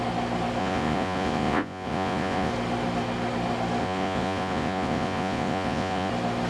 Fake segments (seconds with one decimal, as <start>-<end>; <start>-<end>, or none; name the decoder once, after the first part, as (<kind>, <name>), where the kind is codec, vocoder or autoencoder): 0.6-2.5 (vocoder, Vocos); 3.8-6.1